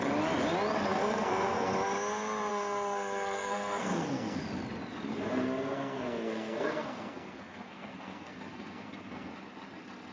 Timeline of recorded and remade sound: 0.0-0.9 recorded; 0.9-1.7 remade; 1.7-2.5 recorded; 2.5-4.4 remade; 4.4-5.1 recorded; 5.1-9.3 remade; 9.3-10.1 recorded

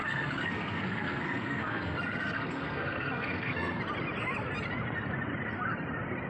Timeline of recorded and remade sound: 0.0-3.8 remade; 3.8-6.3 recorded

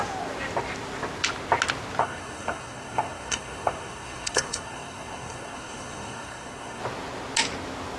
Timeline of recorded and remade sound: 0.0-2.0 recorded; 2.0-6.8 remade; 6.8-8.0 recorded